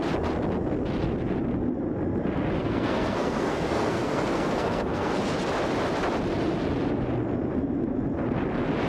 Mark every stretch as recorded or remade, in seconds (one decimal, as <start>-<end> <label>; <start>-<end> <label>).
0.0-2.6 recorded; 2.6-5.2 remade; 5.2-8.9 recorded